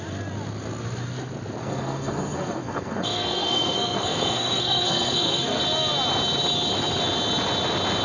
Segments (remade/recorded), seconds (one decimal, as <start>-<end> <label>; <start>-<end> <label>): 0.0-1.6 recorded; 1.6-5.6 remade; 5.6-8.0 recorded

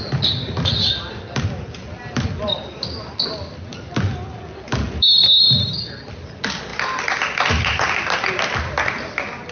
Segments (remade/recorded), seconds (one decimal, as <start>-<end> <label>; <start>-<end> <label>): 0.0-9.5 recorded

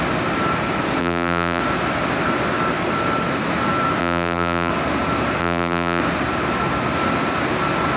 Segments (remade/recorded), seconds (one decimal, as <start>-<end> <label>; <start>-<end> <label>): 0.0-1.0 recorded; 1.0-1.6 remade; 1.6-4.0 recorded; 4.0-4.7 remade; 4.7-5.4 recorded; 5.4-6.0 remade; 6.0-8.0 recorded

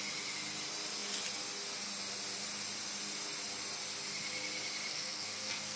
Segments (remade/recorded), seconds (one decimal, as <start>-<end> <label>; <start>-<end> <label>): 0.0-4.9 recorded; 4.9-5.8 remade